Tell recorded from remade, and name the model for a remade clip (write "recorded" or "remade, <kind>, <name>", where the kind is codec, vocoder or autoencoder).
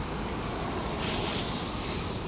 recorded